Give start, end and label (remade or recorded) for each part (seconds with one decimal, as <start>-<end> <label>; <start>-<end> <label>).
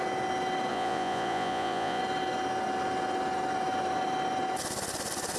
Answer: 0.0-0.7 recorded; 0.7-2.0 remade; 2.0-5.4 recorded